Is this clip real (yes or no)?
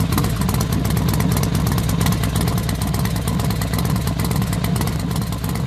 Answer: yes